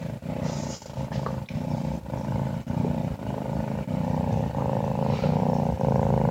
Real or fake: real